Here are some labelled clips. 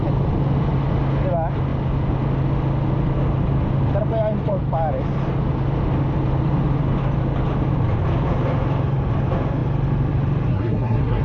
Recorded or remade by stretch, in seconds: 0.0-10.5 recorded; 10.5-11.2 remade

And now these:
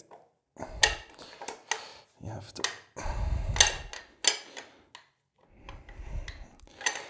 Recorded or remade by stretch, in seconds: 0.0-7.1 recorded

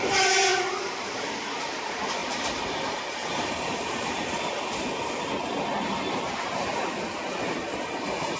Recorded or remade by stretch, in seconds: 0.0-2.2 recorded; 2.2-4.4 remade; 4.4-8.4 recorded